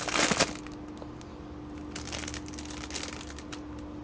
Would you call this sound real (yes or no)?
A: yes